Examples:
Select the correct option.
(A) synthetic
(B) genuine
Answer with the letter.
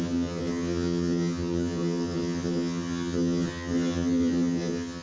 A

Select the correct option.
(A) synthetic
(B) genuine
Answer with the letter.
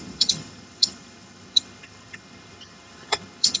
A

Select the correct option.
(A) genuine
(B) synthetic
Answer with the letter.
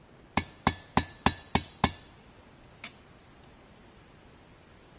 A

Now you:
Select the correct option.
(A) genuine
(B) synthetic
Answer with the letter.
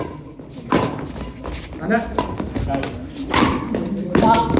A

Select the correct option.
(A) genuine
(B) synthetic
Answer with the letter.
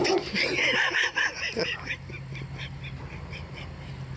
A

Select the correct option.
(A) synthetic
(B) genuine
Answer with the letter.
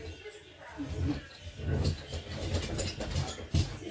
B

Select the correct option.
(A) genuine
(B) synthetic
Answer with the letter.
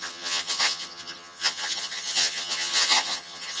B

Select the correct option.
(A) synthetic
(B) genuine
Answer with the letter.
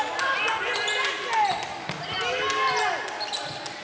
B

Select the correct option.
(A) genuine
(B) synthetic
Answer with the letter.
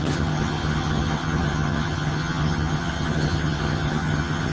B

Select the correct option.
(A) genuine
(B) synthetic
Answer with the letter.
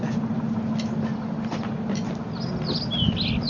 A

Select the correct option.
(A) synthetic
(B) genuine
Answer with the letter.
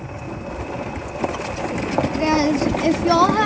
B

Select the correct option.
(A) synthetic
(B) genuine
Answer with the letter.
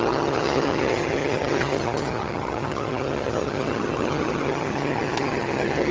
A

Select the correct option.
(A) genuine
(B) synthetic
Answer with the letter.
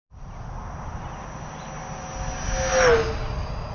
A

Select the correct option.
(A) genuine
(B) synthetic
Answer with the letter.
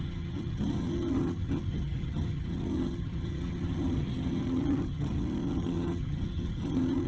B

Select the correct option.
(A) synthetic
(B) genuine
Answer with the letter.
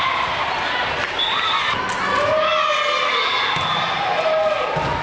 B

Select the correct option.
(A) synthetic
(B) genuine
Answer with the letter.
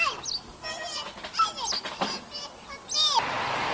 B